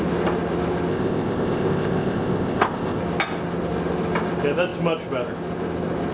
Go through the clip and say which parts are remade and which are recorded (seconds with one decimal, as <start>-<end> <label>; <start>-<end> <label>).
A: 0.0-0.9 recorded; 0.9-3.0 remade; 3.0-6.1 recorded